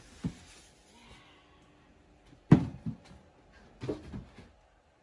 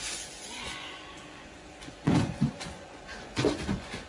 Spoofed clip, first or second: second